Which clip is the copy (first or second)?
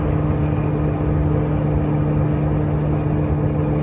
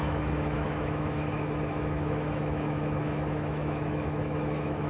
second